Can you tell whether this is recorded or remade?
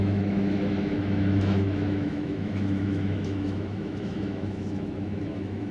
remade